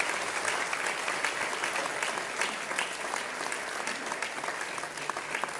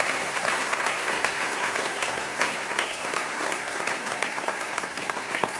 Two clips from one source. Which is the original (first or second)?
first